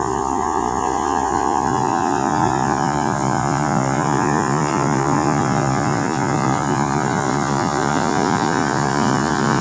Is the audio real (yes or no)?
no